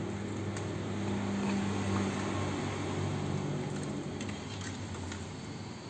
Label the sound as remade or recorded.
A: recorded